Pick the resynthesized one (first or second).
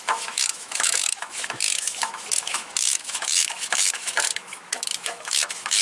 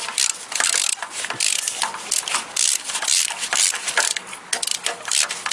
first